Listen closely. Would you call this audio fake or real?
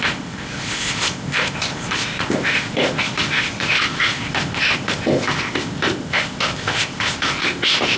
fake